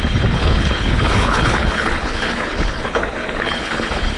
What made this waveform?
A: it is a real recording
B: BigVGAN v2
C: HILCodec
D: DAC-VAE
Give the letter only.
C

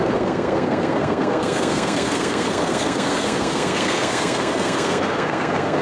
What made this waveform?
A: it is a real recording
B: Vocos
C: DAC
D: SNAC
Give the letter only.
D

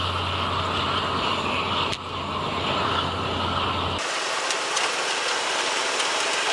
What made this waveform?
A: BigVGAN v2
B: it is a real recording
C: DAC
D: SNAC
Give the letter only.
B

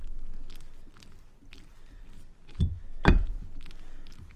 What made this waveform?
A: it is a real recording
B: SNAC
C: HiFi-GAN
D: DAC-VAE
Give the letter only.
A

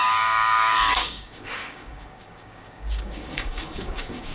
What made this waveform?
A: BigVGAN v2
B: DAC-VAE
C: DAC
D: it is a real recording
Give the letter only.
C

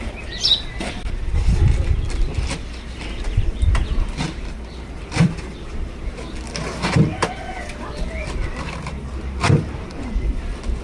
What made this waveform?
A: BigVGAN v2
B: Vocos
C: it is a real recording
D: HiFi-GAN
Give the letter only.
A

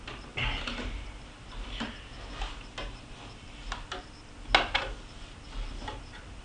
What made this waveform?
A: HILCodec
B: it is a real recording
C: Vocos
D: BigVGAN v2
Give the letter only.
B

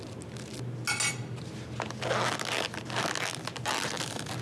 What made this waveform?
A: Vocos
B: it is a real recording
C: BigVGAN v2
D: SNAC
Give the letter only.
B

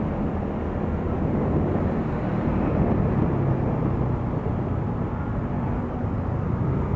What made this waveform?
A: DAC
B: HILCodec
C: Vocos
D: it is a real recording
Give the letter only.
D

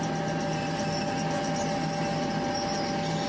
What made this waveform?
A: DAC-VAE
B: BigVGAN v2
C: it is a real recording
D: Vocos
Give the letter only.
C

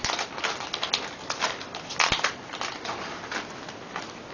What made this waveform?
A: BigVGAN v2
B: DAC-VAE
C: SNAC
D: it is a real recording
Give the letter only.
D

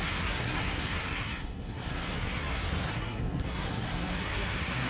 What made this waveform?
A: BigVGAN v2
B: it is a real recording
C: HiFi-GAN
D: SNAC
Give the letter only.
D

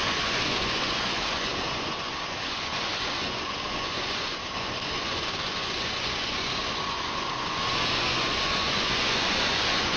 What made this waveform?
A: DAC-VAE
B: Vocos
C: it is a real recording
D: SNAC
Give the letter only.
B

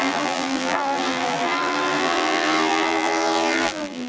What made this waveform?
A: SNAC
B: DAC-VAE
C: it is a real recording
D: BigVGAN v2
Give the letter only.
D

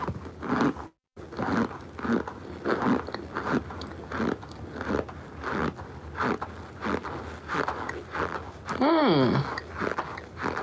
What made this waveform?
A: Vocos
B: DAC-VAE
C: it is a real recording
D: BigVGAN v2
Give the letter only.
C